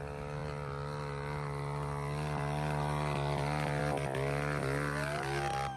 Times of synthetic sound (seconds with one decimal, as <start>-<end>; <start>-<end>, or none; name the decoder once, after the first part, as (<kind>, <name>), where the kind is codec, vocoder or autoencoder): none